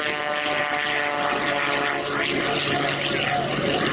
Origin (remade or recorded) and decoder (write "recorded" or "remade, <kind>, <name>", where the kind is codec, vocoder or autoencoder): recorded